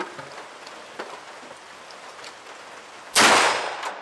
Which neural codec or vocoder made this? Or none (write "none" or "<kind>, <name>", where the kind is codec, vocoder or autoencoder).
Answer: none